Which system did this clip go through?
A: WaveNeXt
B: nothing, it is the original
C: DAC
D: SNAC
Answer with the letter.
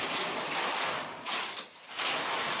B